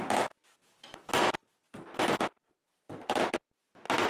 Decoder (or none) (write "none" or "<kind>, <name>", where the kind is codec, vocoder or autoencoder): none